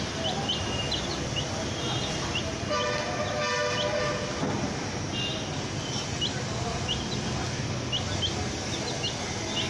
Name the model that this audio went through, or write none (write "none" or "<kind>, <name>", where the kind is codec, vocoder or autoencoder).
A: none